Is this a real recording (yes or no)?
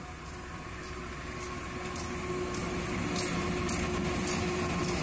yes